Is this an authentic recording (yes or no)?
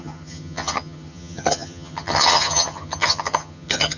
no